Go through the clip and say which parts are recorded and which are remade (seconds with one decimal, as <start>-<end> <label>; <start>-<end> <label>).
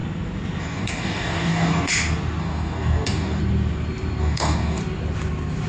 0.0-0.6 recorded; 0.6-1.9 remade; 1.9-2.4 recorded; 2.4-3.4 remade; 3.4-4.2 recorded; 4.2-4.8 remade; 4.8-5.7 recorded